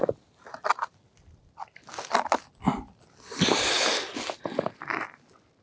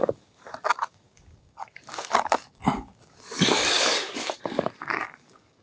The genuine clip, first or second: first